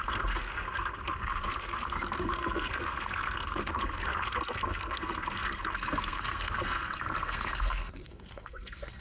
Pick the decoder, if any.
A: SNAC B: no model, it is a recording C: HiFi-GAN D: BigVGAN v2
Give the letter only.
A